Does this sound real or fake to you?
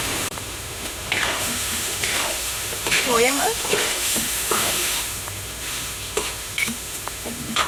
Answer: fake